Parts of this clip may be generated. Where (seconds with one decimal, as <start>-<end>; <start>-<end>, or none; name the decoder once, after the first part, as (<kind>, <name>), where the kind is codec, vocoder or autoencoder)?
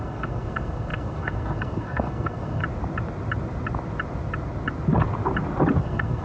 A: 0.0-2.6 (codec, SNAC); 5.8-6.2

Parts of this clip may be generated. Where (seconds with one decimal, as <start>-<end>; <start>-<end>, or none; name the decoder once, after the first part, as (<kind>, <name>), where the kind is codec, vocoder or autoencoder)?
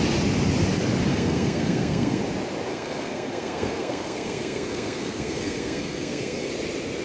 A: 1.1-2.2 (codec, SNAC); 2.7-6.5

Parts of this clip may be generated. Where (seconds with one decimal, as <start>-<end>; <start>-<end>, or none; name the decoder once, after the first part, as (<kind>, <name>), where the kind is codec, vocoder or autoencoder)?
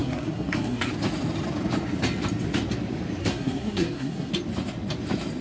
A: 0.0-0.9 (codec, SNAC); 3.2-4.3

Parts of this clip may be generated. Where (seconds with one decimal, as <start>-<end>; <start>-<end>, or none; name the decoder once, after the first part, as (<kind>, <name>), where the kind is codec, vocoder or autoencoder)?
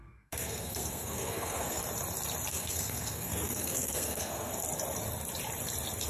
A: 0.0-1.8 (codec, SNAC); 2.5-4.5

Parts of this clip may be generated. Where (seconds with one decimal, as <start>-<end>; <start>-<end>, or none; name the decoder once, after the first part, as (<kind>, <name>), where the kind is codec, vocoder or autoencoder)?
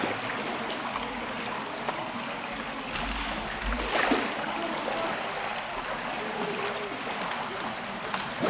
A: none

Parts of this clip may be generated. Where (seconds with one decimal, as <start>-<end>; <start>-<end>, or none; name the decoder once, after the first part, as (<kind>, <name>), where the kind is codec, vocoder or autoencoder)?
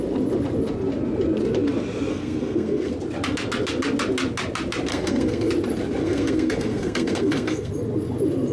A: 2.1-2.9 (codec, SNAC); 4.9-5.5; 6.0-7.7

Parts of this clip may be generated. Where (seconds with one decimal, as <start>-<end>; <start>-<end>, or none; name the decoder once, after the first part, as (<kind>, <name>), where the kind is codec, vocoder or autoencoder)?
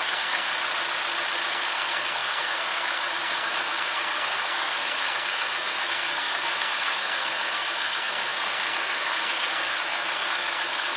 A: 0.0-0.5 (codec, SNAC); 1.5-11.0